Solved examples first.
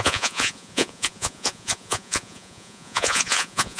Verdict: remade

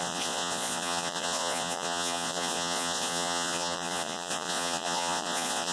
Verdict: remade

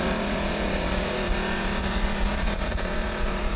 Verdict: remade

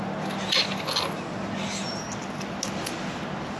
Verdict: recorded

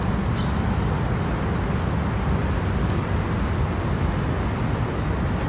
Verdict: recorded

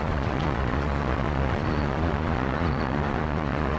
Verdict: remade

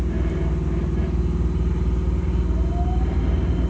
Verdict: recorded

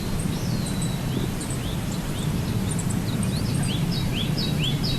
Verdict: recorded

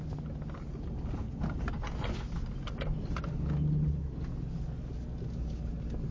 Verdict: recorded